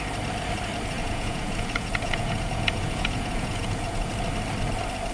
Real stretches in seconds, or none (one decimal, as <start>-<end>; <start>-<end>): 0.0-1.0; 4.1-5.1